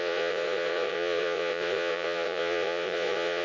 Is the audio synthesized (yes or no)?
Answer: yes